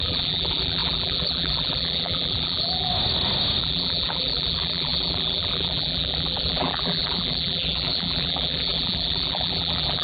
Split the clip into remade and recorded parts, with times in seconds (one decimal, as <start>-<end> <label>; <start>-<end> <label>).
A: 0.0-2.9 remade; 2.9-3.6 recorded; 3.6-10.0 remade